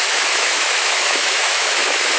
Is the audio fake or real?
fake